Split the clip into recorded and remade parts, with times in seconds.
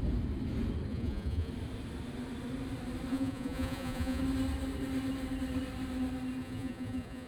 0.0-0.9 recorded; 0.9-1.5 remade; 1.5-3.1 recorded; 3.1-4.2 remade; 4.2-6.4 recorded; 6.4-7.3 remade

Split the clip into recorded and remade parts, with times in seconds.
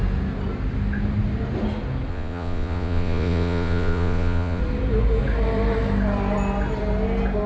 0.0-2.1 recorded; 2.1-4.6 remade; 4.6-7.5 recorded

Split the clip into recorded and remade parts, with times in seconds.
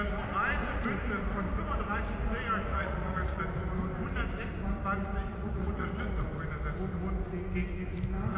0.0-2.7 recorded; 2.7-3.4 remade; 3.4-5.3 recorded; 5.3-6.1 remade; 6.1-8.4 recorded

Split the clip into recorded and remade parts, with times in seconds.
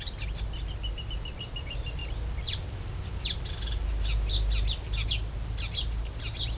0.0-6.6 recorded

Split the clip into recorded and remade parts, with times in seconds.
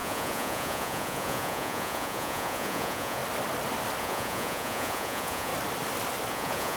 0.0-3.2 remade; 3.2-4.0 recorded; 4.0-5.5 remade; 5.5-6.3 recorded; 6.3-6.8 remade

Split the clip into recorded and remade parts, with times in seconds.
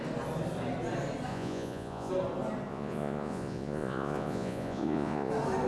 0.0-1.3 recorded; 1.3-2.1 remade; 2.1-2.7 recorded; 2.7-5.3 remade; 5.3-5.7 recorded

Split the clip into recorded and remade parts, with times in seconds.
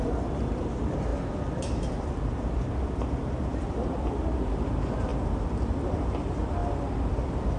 0.0-7.6 recorded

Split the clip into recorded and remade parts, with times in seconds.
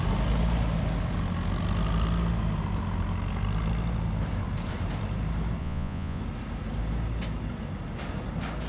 0.0-5.6 recorded; 5.6-6.2 remade; 6.2-8.7 recorded